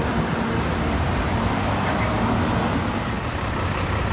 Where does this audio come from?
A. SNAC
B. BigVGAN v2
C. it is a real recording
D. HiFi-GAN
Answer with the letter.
C